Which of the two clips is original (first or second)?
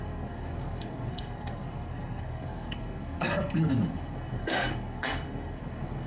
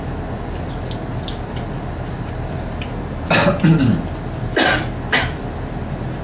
second